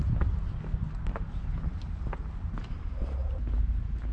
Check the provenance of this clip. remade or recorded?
recorded